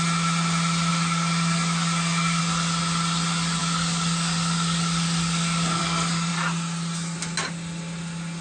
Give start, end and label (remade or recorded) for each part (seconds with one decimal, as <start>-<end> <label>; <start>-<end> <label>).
0.0-0.9 recorded; 0.9-2.4 remade; 2.4-3.6 recorded; 3.6-5.8 remade; 5.8-8.4 recorded